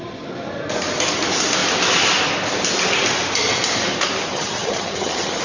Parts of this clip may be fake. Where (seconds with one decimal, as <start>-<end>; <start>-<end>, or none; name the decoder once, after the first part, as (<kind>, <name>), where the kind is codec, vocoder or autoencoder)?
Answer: 4.3-5.4 (vocoder, HiFi-GAN)